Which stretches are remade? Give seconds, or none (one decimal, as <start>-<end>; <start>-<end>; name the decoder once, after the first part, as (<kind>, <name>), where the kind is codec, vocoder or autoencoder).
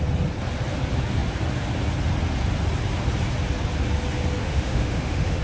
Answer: 4.4-5.4 (autoencoder, DAC-VAE)